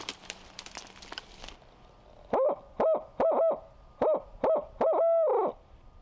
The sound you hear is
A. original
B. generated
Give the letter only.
A